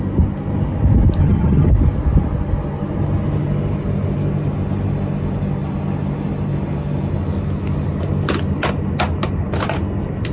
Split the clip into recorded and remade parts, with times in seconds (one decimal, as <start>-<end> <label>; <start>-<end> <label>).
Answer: 0.0-1.2 recorded; 1.2-1.7 remade; 1.7-10.3 recorded